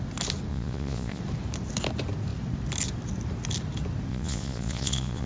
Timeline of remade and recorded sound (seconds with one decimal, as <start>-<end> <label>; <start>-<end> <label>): 0.0-0.5 recorded; 0.5-1.2 remade; 1.2-4.1 recorded; 4.1-5.3 remade